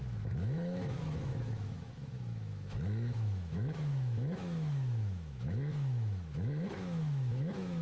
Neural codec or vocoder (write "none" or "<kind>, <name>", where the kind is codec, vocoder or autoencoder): autoencoder, DAC-VAE